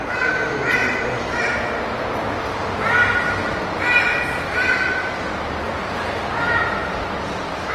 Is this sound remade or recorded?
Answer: recorded